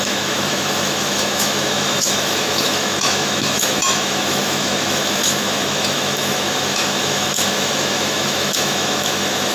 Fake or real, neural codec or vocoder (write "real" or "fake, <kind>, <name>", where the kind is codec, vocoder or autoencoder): fake, autoencoder, DAC-VAE